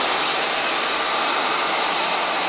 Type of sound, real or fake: real